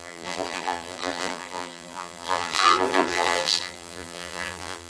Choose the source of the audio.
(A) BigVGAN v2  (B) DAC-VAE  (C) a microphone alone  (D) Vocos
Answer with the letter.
A